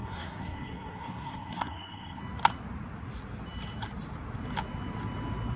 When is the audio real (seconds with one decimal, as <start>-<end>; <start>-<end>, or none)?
2.2-5.6

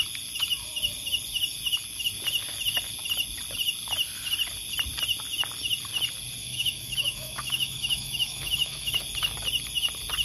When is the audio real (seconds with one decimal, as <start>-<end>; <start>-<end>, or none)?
0.0-6.4; 9.0-10.2

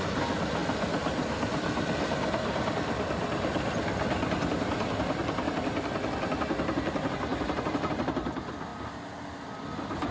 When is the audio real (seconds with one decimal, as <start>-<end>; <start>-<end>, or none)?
0.0-10.1